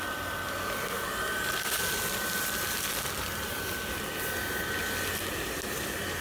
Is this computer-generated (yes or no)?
no